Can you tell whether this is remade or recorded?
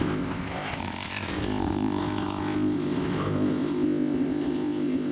remade